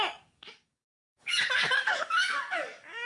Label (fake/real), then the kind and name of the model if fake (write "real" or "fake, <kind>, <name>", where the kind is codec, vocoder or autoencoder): fake, codec, DAC